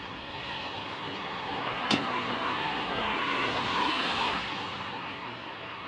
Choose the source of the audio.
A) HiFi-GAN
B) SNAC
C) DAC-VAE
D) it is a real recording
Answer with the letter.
B